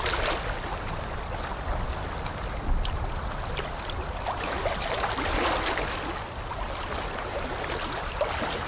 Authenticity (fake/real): real